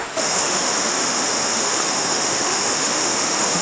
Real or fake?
fake